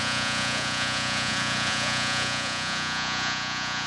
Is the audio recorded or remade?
remade